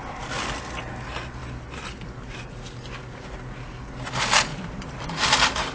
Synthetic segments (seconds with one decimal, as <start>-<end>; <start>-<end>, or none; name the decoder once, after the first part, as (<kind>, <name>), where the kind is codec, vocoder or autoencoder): 4.5-5.2 (vocoder, BigVGAN v2)